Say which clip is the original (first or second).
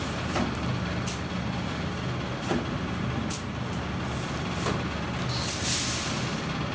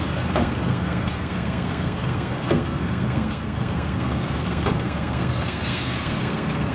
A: first